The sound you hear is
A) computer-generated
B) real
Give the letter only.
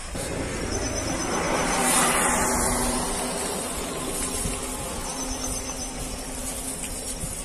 B